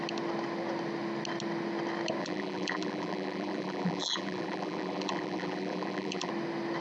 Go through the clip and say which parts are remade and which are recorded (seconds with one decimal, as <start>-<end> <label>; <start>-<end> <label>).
0.0-2.2 recorded; 2.2-6.3 remade; 6.3-6.8 recorded